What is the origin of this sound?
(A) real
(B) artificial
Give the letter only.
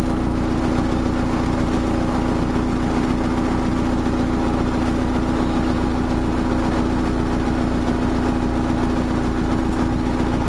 A